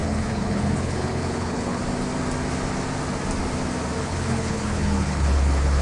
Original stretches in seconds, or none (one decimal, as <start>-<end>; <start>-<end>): 1.8-4.0